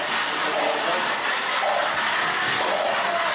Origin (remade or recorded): recorded